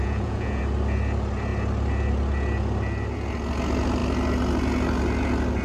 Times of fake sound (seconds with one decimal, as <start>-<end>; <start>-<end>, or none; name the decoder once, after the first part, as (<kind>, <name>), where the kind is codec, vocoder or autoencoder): 0.0-0.6 (vocoder, Vocos)